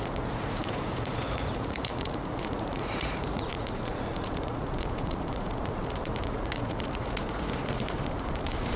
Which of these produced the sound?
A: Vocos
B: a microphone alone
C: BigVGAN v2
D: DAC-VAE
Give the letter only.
A